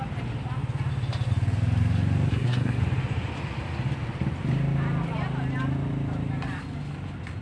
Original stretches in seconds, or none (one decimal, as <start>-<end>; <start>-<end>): 0.0-2.3; 2.8-7.4